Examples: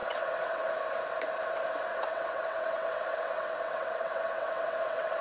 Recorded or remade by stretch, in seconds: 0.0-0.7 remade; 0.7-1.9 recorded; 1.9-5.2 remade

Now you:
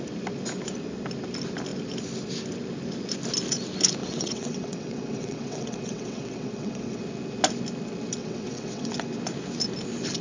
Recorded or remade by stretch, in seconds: 0.0-4.0 recorded; 4.0-7.0 remade; 7.0-8.2 recorded; 8.2-8.9 remade; 8.9-10.2 recorded

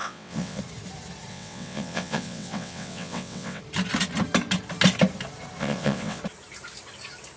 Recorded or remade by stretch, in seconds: 0.0-0.6 remade; 0.6-1.3 recorded; 1.3-3.6 remade; 3.6-5.6 recorded; 5.6-6.2 remade; 6.2-7.4 recorded

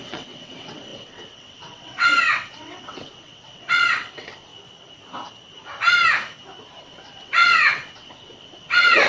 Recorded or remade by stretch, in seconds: 0.0-4.5 remade; 4.5-6.8 recorded; 6.8-9.1 remade